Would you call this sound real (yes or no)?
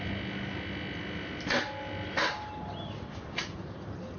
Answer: yes